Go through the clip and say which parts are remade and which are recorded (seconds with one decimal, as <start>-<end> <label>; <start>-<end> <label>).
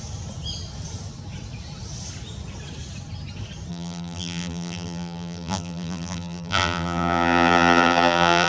0.0-3.7 recorded; 3.7-8.5 remade